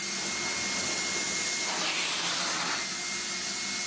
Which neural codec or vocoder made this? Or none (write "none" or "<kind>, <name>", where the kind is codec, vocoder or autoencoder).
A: none